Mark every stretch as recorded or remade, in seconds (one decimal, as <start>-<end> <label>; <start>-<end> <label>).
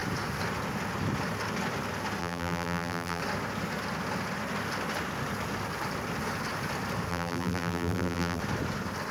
0.0-2.2 recorded; 2.2-3.2 remade; 3.2-7.1 recorded; 7.1-8.4 remade; 8.4-9.1 recorded